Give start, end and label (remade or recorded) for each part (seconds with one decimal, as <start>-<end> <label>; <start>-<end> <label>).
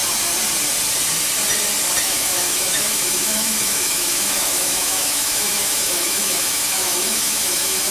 0.0-2.0 recorded; 2.0-7.9 remade